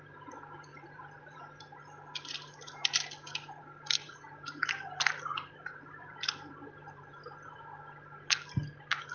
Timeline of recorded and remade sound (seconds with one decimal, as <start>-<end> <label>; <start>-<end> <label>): 0.0-0.7 recorded; 0.7-1.4 remade; 1.4-4.0 recorded; 4.0-7.5 remade; 7.5-9.1 recorded